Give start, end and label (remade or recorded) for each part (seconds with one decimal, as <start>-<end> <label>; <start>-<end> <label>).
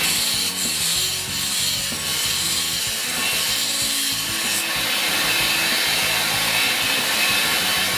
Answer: 0.0-2.1 recorded; 2.1-2.8 remade; 2.8-5.0 recorded; 5.0-8.0 remade